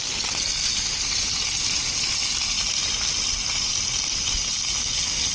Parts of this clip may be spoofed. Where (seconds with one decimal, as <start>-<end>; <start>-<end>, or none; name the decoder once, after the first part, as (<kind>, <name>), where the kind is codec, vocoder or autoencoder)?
none